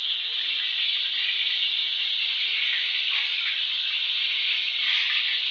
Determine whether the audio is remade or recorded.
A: recorded